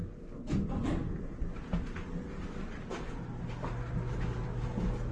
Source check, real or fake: real